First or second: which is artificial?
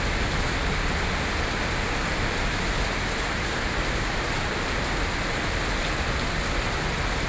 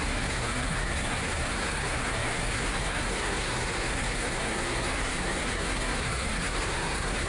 second